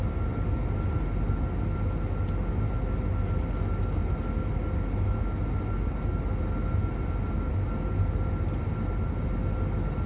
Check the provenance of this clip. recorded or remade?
recorded